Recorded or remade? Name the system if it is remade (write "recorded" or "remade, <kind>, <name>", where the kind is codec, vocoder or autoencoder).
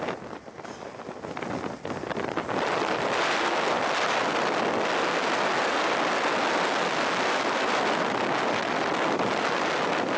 recorded